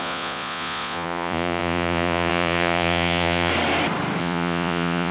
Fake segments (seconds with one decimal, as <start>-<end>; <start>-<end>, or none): 0.0-3.5; 4.2-5.1